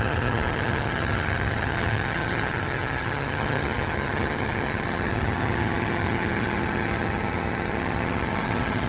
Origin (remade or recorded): remade